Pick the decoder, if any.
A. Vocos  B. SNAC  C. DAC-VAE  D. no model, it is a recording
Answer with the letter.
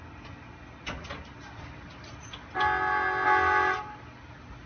D